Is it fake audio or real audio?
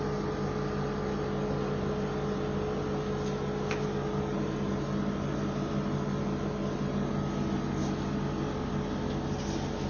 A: real